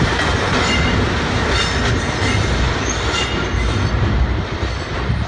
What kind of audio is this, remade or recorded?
recorded